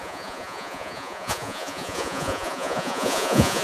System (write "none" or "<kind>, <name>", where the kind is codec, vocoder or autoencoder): vocoder, Vocos